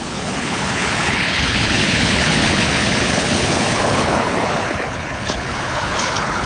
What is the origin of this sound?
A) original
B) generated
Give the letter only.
B